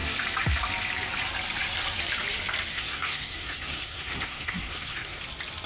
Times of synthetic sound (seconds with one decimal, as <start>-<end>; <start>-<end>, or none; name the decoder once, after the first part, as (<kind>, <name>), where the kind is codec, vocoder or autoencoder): 2.7-5.2 (codec, SNAC)